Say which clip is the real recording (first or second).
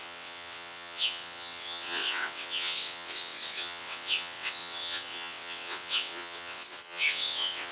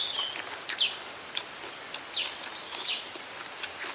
second